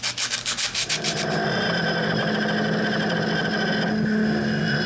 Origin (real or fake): real